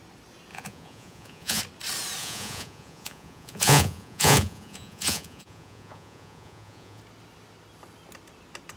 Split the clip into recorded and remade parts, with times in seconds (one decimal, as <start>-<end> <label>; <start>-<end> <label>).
0.0-0.5 recorded; 0.5-1.6 remade; 1.6-2.2 recorded; 2.2-7.0 remade; 7.0-8.8 recorded